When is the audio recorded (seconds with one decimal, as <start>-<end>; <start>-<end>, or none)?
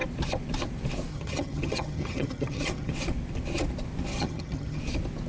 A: 0.0-1.1; 2.9-4.1; 4.8-5.3